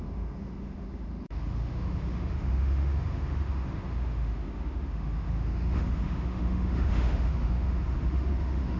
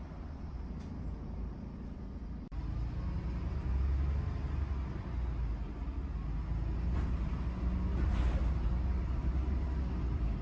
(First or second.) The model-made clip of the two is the first